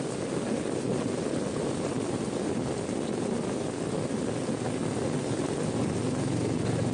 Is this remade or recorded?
recorded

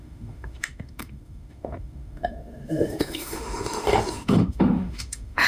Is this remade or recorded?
remade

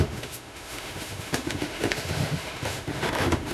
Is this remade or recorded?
remade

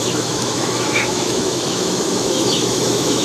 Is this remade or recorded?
remade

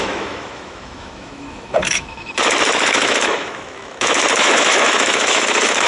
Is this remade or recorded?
remade